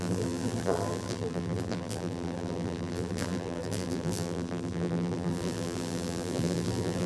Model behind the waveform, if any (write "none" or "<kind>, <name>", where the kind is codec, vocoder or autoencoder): vocoder, BigVGAN v2